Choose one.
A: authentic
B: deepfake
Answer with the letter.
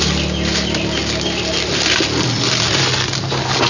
A